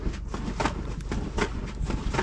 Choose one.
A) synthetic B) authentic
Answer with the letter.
B